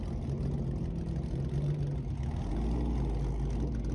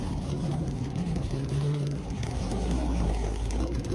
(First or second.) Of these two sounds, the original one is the first